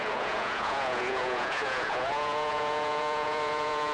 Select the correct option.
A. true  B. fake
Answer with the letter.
B